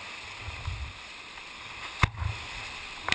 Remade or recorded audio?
recorded